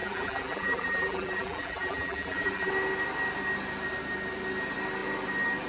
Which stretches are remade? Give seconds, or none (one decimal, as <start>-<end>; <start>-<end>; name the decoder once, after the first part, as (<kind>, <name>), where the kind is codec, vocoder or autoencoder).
0.0-2.7 (vocoder, BigVGAN v2)